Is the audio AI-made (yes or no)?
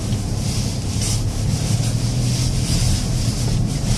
no